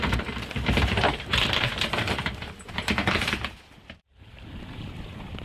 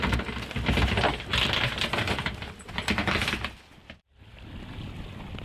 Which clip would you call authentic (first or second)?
second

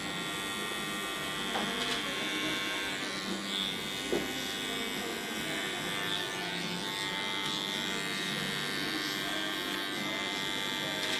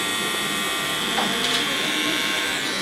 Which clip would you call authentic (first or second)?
first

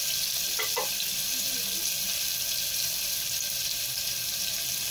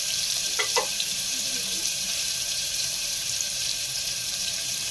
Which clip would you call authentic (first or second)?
first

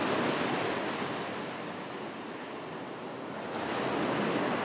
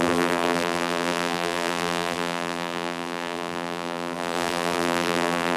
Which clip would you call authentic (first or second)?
first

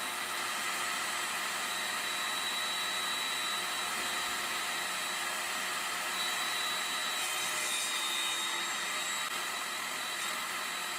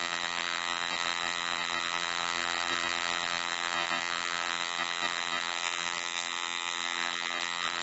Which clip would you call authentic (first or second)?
first